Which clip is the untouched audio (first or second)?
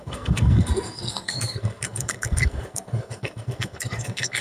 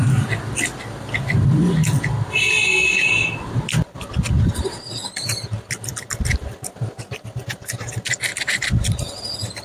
second